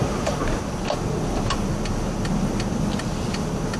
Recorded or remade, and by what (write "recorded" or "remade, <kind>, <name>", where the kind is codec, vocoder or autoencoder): recorded